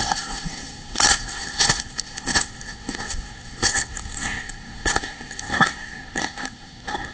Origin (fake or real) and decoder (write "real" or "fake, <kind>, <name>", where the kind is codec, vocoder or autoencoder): fake, codec, SNAC